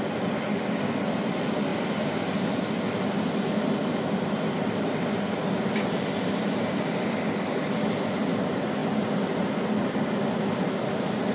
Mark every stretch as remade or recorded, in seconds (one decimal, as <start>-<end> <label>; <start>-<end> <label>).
0.0-11.3 recorded